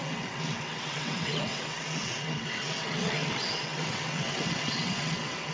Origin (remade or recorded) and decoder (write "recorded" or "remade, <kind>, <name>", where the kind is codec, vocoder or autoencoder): remade, vocoder, WaveNeXt